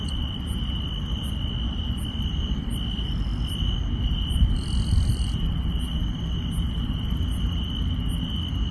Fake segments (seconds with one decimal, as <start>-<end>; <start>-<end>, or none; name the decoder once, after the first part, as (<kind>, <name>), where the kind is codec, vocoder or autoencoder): none